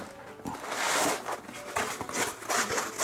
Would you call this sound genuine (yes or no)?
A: yes